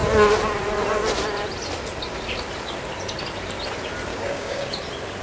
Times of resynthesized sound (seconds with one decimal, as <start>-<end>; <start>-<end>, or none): 4.1-4.7